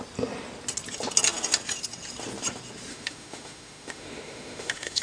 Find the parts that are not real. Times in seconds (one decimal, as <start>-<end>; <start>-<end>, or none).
2.9-5.0